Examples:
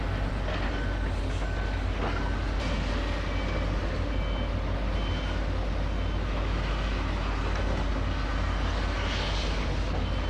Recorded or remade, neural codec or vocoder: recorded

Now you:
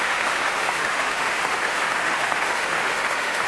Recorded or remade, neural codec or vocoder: remade, autoencoder, DAC-VAE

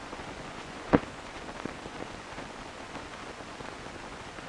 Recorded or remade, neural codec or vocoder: remade, vocoder, Vocos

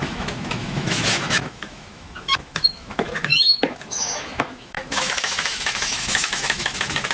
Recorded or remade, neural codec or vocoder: remade, autoencoder, DAC-VAE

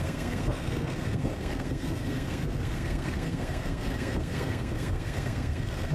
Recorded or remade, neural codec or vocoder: remade, codec, SNAC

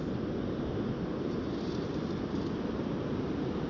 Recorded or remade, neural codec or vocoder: recorded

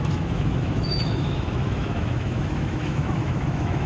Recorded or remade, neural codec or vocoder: remade, autoencoder, DAC-VAE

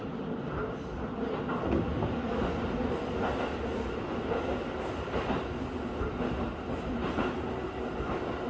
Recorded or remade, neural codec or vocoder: recorded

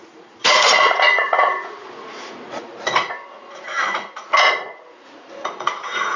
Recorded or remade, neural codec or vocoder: remade, vocoder, Vocos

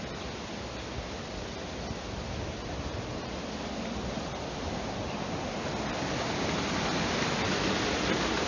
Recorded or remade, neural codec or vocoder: recorded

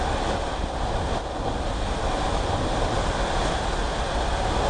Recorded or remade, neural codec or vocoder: recorded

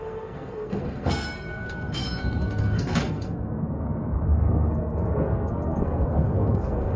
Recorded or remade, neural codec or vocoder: remade, codec, SNAC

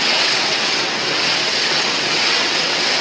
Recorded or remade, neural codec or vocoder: remade, vocoder, WaveNeXt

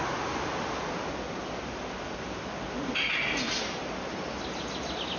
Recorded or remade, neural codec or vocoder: recorded